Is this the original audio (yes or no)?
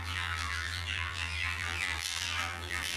no